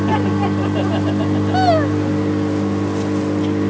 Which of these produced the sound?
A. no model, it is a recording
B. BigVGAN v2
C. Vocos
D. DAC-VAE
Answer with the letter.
A